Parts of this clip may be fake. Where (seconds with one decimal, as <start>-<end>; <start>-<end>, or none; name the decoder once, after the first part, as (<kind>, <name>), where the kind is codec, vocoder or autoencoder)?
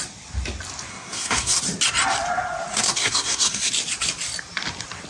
0.9-1.6 (codec, SNAC); 2.7-3.7